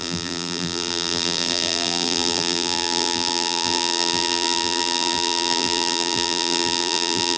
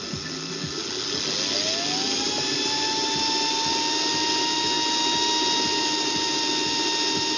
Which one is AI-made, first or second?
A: first